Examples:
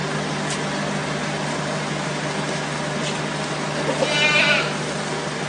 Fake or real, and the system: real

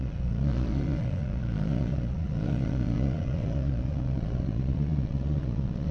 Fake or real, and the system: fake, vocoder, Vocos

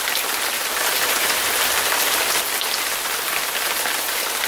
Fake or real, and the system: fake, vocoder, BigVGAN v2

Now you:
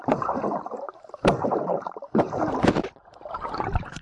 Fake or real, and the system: fake, vocoder, BigVGAN v2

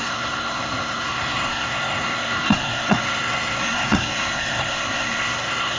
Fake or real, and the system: fake, codec, SNAC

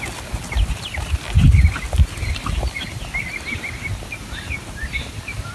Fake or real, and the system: real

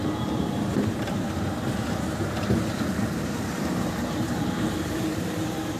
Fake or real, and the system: fake, vocoder, BigVGAN v2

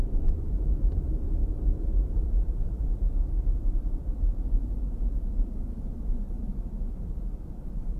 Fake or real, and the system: fake, vocoder, BigVGAN v2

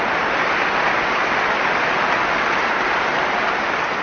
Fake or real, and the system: fake, vocoder, BigVGAN v2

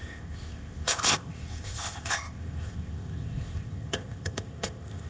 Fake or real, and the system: fake, codec, ZipCodec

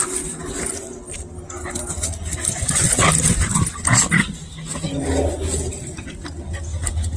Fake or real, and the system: real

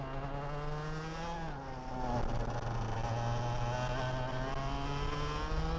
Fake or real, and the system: real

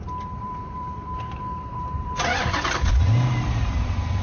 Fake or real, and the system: fake, vocoder, BigVGAN v2